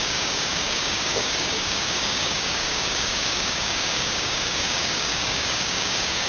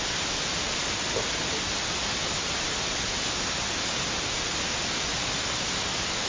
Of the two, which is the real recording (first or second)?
second